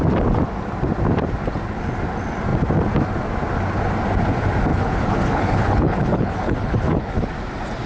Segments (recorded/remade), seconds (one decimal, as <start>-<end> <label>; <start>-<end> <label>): 0.0-4.7 recorded; 4.7-7.3 remade; 7.3-7.9 recorded